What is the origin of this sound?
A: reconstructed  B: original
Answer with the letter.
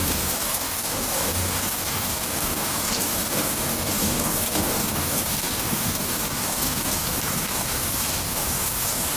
A